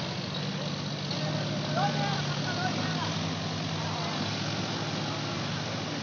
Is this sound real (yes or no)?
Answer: yes